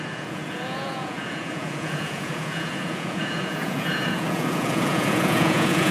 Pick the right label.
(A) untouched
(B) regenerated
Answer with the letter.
B